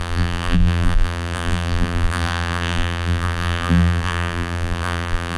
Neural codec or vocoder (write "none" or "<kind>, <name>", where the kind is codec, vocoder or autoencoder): vocoder, BigVGAN v2